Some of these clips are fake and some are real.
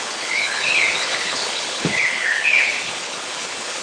fake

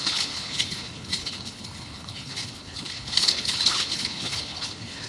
fake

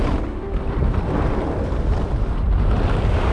real